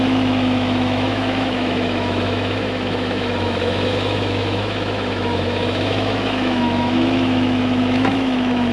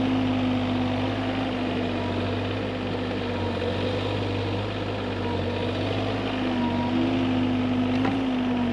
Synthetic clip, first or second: first